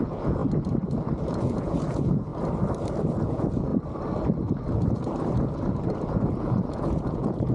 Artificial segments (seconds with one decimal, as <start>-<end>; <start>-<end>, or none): 0.0-0.4; 1.4-2.3; 3.2-3.7; 6.4-7.5